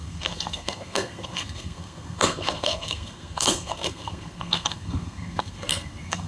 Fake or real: fake